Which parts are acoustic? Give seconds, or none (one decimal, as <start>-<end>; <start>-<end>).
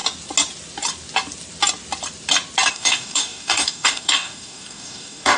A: 0.0-2.7